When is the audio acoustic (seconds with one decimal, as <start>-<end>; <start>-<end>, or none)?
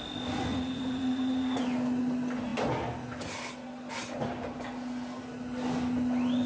0.0-0.5; 1.6-6.5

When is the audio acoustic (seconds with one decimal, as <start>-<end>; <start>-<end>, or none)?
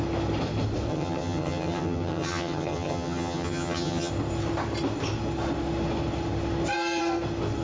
0.0-0.9; 4.1-7.6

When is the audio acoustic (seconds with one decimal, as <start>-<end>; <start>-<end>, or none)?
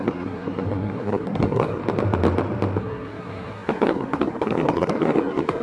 1.8-2.8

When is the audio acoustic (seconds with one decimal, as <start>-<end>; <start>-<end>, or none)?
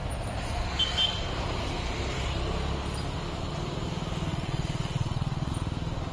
0.0-4.3; 5.5-6.1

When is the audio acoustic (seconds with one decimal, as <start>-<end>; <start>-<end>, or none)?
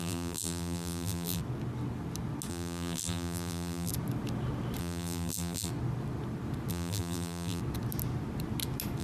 1.4-2.5; 3.9-4.8; 5.7-6.7; 7.6-9.0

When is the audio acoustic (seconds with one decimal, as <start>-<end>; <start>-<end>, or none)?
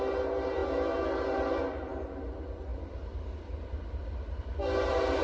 0.0-5.2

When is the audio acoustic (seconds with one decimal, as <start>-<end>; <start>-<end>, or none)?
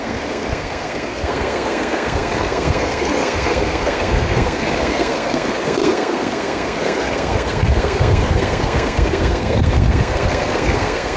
none